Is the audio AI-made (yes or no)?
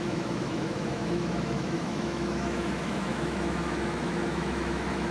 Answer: yes